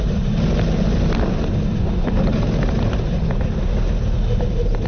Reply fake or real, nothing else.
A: real